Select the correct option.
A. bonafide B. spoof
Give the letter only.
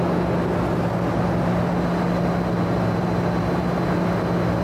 A